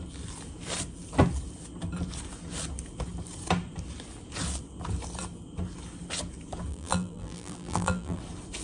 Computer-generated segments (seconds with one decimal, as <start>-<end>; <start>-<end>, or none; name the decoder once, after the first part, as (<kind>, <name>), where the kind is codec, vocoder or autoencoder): 6.7-8.2 (vocoder, BigVGAN v2)